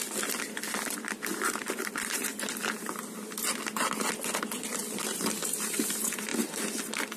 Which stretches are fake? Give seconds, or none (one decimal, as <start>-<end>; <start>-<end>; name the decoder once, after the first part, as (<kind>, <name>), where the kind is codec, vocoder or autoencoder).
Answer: 0.0-2.3 (vocoder, BigVGAN v2); 3.5-7.2